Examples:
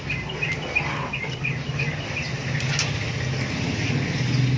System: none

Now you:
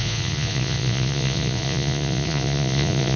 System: vocoder, Vocos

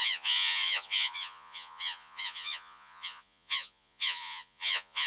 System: vocoder, Vocos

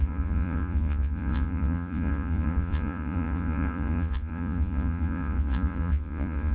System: vocoder, Vocos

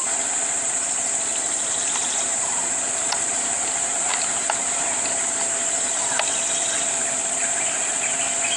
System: none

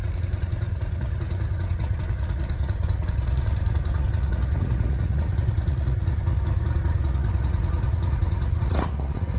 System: vocoder, Vocos